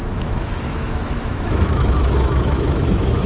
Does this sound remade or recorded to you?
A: remade